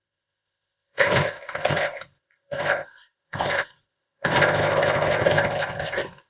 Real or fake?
fake